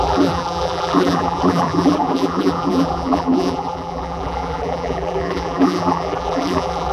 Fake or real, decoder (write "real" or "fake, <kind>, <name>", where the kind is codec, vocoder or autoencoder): fake, vocoder, BigVGAN v2